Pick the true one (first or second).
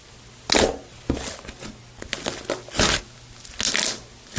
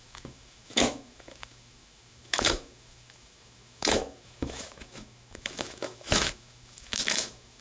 first